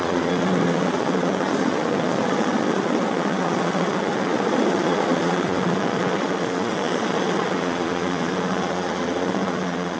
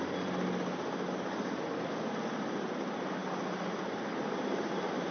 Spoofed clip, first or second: first